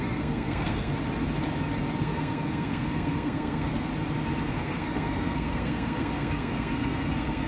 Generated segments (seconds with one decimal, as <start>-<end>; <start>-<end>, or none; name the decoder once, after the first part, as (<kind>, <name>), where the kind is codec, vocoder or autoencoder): 0.0-0.9 (codec, SNAC); 2.0-3.9; 4.5-7.5